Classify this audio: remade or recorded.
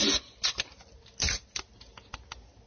recorded